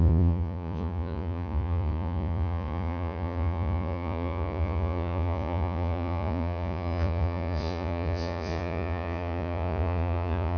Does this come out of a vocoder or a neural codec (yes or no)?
yes